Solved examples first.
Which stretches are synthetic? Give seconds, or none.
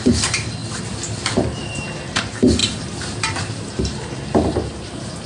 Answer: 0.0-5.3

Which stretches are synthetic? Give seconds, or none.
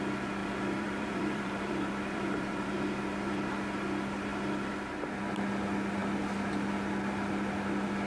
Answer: 0.4-2.7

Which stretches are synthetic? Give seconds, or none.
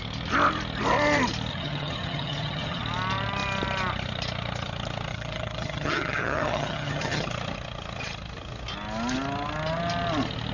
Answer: 1.5-2.8; 5.1-7.3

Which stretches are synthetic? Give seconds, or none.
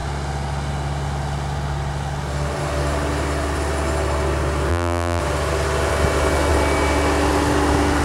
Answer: 4.7-5.2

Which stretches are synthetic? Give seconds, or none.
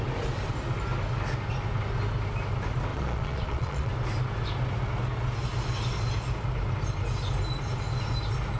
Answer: 2.9-3.9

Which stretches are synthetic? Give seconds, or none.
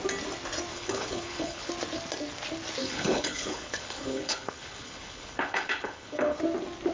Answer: 0.7-1.7; 2.8-6.4